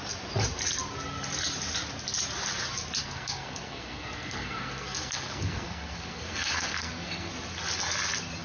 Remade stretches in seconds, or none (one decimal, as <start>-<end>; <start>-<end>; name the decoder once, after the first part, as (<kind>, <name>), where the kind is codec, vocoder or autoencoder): 3.0-7.3 (codec, SNAC)